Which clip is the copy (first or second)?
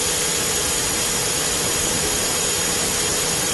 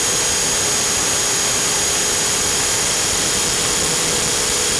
first